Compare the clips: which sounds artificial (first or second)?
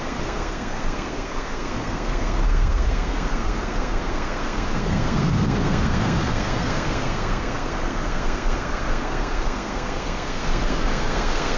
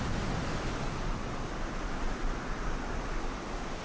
first